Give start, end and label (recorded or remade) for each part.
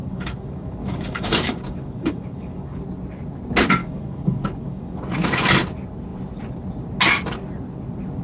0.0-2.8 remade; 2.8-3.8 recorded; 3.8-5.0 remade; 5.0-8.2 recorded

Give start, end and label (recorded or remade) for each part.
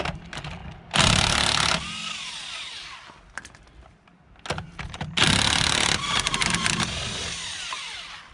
0.0-8.3 recorded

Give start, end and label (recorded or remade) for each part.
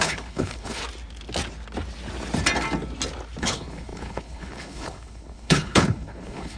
0.0-0.8 remade; 0.8-3.4 recorded; 3.4-6.6 remade